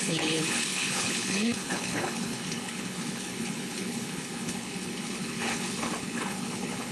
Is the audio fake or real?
fake